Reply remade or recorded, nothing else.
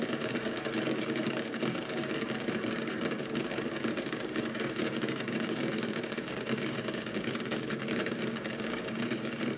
remade